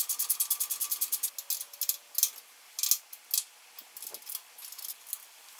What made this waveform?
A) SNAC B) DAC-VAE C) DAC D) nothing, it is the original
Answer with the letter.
D